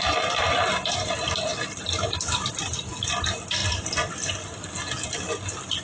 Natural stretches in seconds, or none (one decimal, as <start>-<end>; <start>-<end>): 0.0-5.8